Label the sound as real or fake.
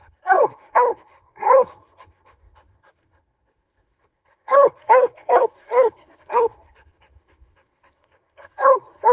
fake